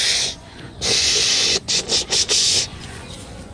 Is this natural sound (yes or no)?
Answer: no